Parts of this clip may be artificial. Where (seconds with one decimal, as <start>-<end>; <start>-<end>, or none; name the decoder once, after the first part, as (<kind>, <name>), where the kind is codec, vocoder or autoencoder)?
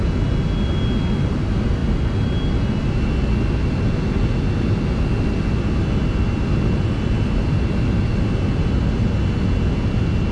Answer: none